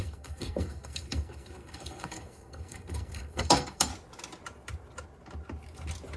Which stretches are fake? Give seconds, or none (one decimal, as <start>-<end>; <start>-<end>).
0.0-3.9